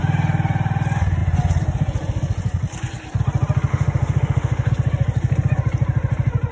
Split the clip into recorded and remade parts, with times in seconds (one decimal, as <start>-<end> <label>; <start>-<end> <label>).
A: 0.0-3.7 recorded; 3.7-4.7 remade; 4.7-6.5 recorded

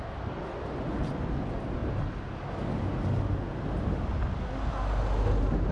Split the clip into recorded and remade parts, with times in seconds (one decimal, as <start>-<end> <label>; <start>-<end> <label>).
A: 0.0-5.7 recorded

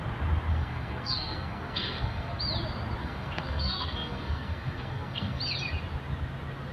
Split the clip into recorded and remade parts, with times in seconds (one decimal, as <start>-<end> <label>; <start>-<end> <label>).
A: 0.0-0.5 recorded; 0.5-2.4 remade; 2.4-3.0 recorded; 3.0-5.4 remade; 5.4-6.7 recorded

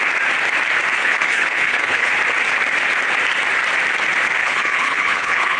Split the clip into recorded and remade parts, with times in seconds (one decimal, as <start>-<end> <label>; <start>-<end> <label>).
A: 0.0-1.0 recorded; 1.0-2.1 remade; 2.1-4.4 recorded; 4.4-5.6 remade